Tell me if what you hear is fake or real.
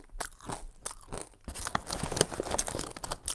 real